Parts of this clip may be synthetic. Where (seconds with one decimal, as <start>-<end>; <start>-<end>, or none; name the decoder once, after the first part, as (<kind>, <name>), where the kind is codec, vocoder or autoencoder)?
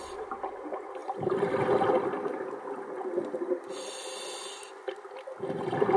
none